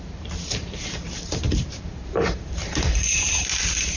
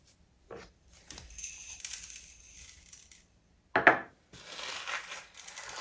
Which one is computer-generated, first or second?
first